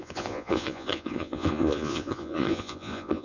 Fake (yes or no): yes